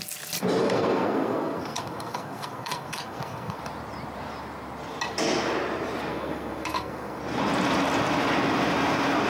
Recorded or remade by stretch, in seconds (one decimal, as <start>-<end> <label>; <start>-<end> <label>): 0.0-0.6 recorded; 0.6-3.6 remade; 3.6-6.1 recorded; 6.1-7.2 remade; 7.2-9.3 recorded